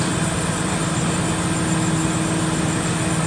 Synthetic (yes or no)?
no